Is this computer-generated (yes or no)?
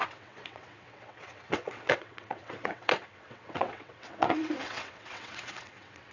yes